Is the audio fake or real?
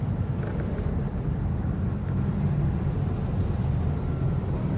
real